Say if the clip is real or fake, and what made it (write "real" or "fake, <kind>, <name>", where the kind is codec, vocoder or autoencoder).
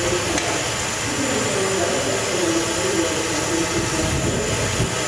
real